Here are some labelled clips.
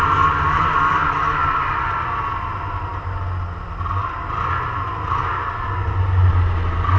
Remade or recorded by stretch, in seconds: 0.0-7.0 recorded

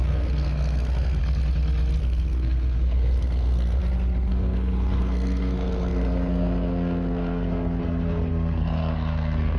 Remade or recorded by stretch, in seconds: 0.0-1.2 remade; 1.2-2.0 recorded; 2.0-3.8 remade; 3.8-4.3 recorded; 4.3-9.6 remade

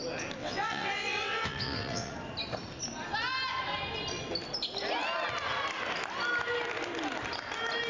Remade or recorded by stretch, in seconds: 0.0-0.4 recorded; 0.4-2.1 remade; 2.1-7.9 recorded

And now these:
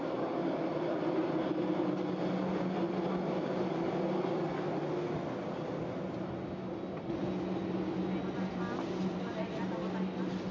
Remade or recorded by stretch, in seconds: 0.0-10.5 recorded

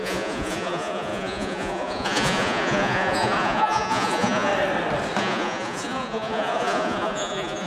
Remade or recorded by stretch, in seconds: 0.0-4.5 remade; 4.5-5.2 recorded; 5.2-7.7 remade